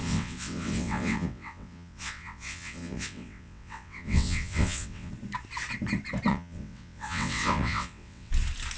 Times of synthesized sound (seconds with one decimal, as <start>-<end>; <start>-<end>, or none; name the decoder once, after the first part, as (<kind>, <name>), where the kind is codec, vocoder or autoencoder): 0.0-5.1 (vocoder, WaveNeXt); 6.3-8.3